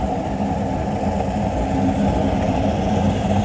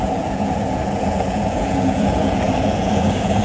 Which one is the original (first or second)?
first